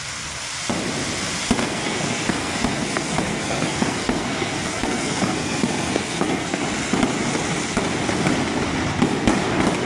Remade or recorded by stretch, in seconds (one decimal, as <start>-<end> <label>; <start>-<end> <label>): 0.0-1.6 recorded; 1.6-6.6 remade; 6.6-9.9 recorded